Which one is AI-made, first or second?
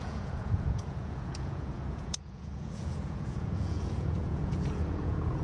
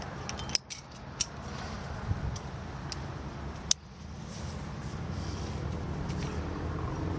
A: first